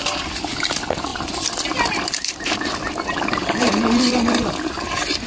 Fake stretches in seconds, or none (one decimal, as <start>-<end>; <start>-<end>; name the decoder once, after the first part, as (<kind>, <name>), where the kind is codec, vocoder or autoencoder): 1.1-3.7 (vocoder, BigVGAN v2)